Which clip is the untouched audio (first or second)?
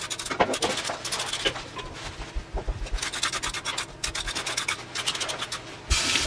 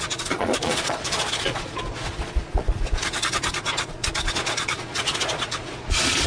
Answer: first